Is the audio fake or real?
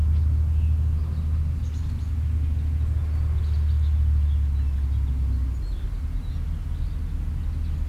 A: real